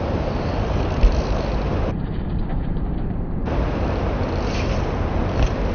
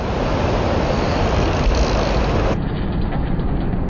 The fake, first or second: first